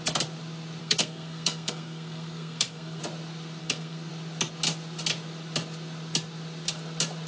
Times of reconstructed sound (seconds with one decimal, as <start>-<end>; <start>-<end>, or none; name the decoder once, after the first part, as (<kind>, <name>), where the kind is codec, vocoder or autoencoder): 0.8-3.0 (codec, SNAC); 3.6-4.1